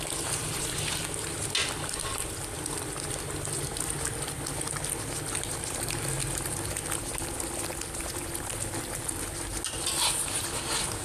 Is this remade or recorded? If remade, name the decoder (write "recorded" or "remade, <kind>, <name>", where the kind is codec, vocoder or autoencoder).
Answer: recorded